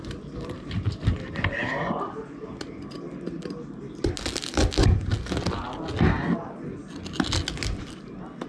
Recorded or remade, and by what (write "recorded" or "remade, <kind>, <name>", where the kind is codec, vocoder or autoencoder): recorded